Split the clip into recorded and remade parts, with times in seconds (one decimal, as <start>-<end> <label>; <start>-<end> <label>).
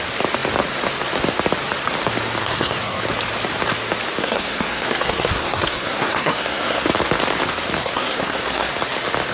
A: 0.0-2.4 recorded; 2.4-3.0 remade; 3.0-4.2 recorded; 4.2-6.9 remade; 6.9-7.8 recorded; 7.8-8.7 remade; 8.7-9.3 recorded